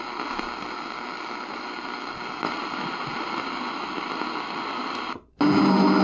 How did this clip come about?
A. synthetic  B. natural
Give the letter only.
B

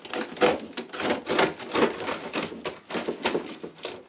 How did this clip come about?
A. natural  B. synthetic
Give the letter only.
A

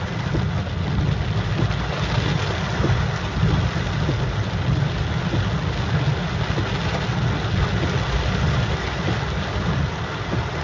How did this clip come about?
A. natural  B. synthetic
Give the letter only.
A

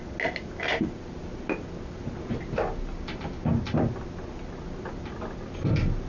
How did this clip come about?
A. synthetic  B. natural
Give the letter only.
B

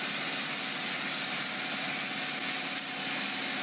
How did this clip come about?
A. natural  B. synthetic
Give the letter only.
A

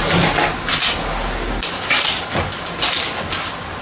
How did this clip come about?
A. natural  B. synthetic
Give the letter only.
A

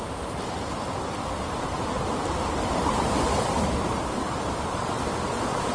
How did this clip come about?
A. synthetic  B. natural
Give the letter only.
B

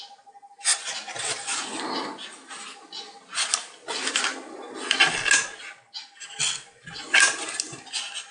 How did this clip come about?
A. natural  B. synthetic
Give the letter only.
A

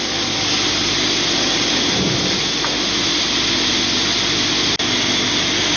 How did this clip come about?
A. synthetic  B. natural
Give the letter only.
B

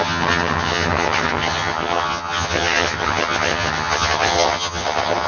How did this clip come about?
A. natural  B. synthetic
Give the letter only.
B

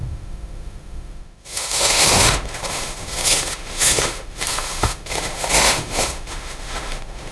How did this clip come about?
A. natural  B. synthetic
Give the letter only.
B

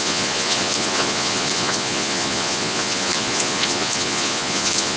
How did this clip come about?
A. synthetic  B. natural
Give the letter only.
A